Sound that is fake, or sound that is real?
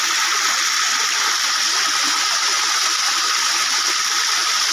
real